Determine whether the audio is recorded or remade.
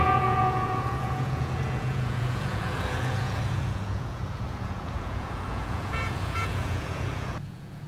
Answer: remade